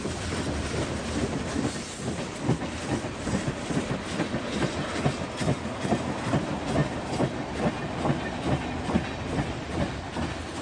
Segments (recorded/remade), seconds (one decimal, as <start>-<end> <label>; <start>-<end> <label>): 0.0-10.6 recorded